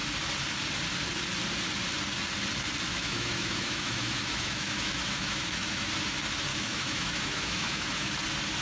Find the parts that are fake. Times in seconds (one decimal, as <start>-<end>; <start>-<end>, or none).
2.9-5.9; 6.5-8.1

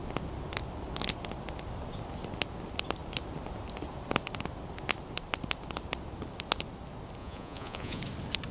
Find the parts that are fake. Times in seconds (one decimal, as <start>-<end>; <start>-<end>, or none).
7.2-8.0

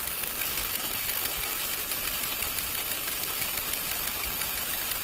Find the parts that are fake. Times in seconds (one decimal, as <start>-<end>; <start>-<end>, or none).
0.6-1.6

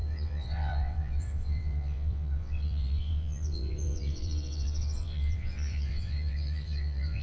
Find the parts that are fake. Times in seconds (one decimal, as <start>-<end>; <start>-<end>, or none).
0.0-7.2

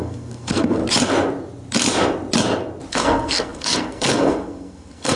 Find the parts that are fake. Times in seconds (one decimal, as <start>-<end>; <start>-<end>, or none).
0.0-0.8; 2.9-5.2